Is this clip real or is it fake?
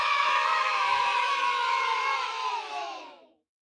fake